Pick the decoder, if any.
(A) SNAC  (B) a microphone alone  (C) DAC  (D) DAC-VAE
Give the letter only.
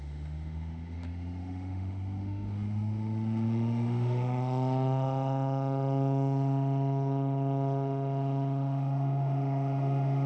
D